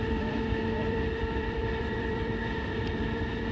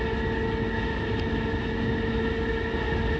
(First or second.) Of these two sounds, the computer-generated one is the first